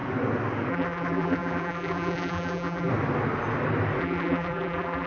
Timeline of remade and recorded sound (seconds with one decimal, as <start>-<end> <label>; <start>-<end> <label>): 0.0-0.7 recorded; 0.7-2.9 remade; 2.9-4.0 recorded; 4.0-5.1 remade